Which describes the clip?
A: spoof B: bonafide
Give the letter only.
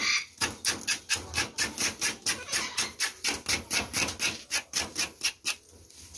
B